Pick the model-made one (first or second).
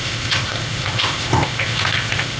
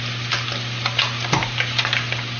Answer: first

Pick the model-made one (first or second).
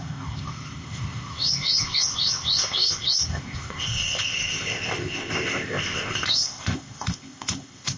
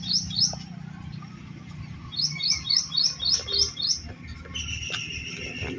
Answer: first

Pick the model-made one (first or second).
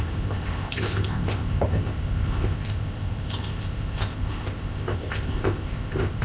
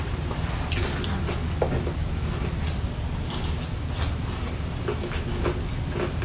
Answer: first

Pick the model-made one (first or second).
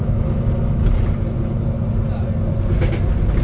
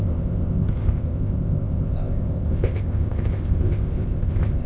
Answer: second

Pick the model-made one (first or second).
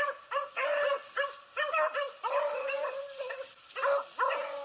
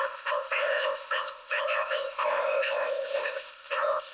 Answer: second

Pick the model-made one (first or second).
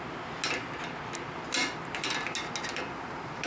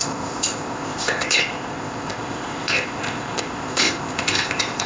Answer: second